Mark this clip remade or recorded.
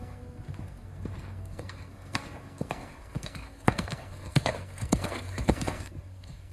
remade